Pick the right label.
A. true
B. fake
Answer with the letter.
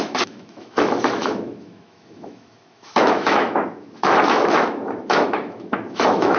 B